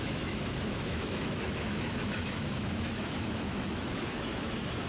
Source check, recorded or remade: remade